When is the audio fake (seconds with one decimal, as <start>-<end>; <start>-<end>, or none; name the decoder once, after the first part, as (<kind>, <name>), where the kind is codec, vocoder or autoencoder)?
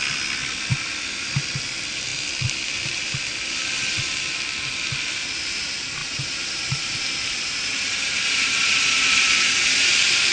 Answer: 6.0-9.9 (vocoder, BigVGAN v2)